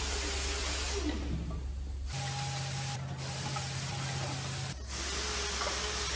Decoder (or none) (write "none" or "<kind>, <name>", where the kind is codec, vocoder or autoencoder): none